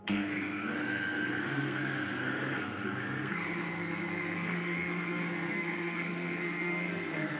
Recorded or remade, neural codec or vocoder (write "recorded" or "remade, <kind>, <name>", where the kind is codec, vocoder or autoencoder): remade, codec, SNAC